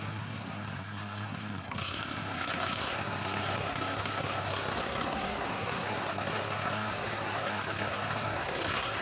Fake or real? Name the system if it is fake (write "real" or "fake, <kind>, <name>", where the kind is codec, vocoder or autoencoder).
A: fake, codec, SNAC